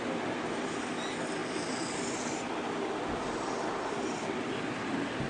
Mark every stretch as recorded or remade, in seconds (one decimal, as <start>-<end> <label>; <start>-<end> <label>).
0.0-5.3 recorded